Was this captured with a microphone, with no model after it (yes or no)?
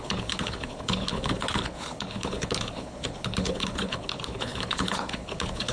no